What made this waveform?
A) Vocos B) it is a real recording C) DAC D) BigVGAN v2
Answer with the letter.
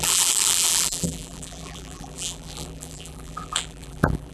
D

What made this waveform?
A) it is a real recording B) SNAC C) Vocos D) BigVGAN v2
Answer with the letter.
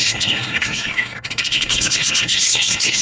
B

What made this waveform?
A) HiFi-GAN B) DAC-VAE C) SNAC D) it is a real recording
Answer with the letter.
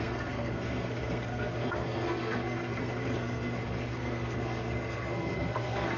C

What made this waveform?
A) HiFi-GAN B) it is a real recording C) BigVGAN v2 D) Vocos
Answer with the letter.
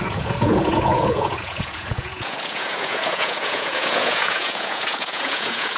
D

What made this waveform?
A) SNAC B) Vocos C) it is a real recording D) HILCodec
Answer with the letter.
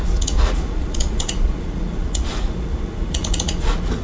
B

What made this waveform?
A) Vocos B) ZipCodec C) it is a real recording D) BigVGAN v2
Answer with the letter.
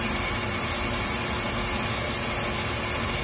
C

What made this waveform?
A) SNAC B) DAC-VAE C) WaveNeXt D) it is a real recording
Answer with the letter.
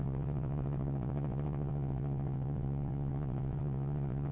C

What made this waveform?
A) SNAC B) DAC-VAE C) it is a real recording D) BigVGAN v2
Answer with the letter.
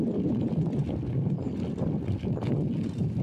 C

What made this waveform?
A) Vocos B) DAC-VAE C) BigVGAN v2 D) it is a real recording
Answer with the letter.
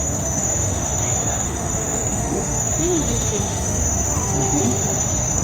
B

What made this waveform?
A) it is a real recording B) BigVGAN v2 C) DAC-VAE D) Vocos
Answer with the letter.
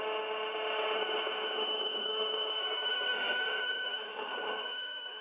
C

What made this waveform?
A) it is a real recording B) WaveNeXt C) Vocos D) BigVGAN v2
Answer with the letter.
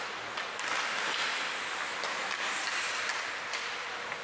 A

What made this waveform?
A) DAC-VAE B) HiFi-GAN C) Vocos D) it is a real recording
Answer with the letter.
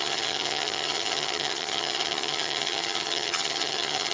B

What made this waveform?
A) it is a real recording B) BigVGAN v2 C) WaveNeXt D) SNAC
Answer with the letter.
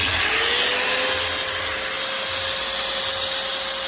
A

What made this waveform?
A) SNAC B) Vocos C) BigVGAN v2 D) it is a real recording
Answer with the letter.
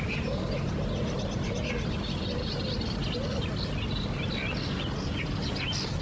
D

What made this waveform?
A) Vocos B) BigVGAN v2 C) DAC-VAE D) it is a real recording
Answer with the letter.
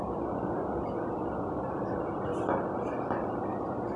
D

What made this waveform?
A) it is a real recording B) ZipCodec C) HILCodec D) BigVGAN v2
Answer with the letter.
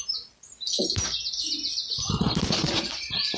A